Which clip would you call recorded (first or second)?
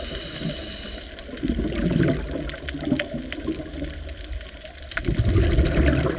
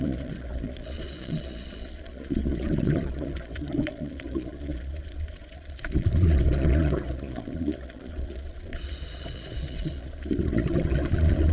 first